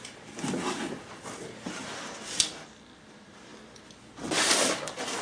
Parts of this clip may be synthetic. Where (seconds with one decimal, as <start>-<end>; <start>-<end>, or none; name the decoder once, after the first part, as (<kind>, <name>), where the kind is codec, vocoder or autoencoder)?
none